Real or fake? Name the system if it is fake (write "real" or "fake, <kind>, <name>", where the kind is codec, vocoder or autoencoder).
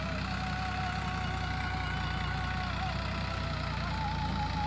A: real